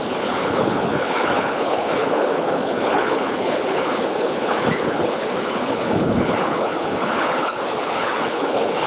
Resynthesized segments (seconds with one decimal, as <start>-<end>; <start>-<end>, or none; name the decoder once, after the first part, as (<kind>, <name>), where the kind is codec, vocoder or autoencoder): 0.0-8.9 (codec, HILCodec)